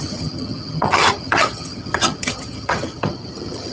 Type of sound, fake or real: fake